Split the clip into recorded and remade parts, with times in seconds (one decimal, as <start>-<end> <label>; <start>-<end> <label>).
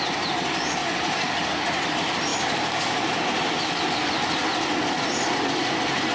0.0-6.1 recorded